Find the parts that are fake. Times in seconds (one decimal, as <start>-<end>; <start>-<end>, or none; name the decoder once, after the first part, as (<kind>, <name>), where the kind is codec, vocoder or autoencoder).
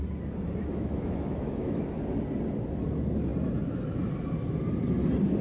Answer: 0.6-1.8 (autoencoder, DAC-VAE)